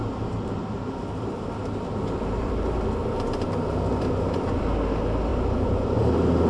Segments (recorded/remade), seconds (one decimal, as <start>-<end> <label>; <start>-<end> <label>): 0.0-3.9 remade; 3.9-5.3 recorded; 5.3-6.1 remade; 6.1-6.5 recorded